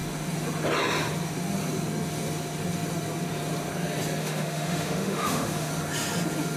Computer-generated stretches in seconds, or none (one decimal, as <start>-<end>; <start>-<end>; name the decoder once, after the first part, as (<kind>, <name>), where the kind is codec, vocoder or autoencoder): 4.2-5.7 (autoencoder, DAC-VAE)